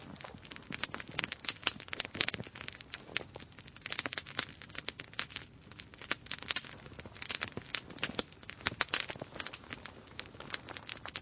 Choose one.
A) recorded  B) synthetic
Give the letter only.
A